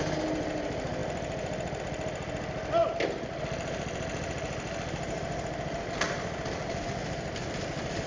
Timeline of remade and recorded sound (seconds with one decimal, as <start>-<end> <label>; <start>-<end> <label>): 0.0-8.1 recorded